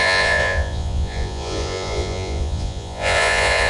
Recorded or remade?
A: remade